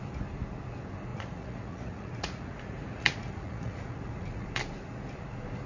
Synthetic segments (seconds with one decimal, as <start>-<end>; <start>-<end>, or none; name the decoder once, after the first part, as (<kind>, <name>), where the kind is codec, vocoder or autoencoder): 1.1-4.5 (vocoder, Vocos)